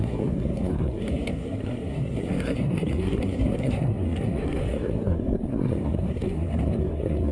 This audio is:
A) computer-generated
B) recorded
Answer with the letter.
A